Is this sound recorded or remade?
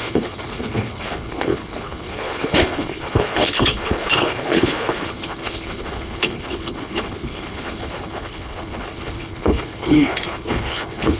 remade